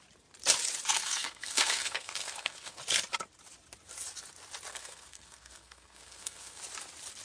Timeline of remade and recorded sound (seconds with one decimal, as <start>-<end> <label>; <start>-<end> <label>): 0.0-0.9 recorded; 0.9-2.8 remade; 2.8-4.7 recorded; 4.7-6.6 remade; 6.6-7.2 recorded